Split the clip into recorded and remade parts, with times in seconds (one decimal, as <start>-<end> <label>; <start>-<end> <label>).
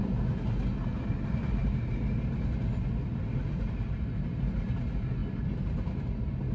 0.0-6.5 recorded